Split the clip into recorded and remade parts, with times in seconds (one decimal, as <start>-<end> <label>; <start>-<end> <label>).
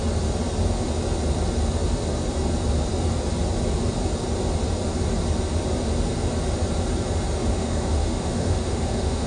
0.0-7.5 recorded; 7.5-9.3 remade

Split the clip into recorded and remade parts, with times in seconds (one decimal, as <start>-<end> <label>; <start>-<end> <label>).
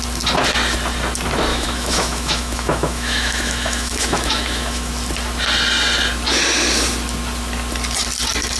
0.0-1.5 recorded; 1.5-4.9 remade; 4.9-8.6 recorded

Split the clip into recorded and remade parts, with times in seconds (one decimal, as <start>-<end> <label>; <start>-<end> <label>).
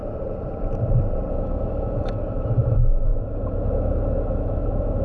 0.0-1.3 recorded; 1.3-5.0 remade